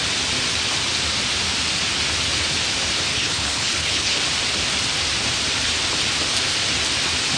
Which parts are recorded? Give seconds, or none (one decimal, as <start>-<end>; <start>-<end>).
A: 0.0-3.1; 4.2-7.4

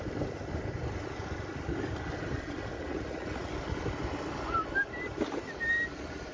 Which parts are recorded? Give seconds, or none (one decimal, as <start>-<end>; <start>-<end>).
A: 0.0-2.8; 3.5-6.3

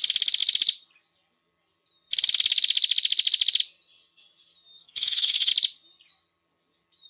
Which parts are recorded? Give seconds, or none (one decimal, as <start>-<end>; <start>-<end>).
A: 0.0-4.8; 5.5-7.1

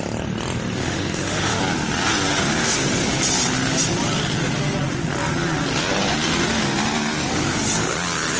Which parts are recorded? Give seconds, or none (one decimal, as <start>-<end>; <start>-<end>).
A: 0.0-0.8; 1.6-8.4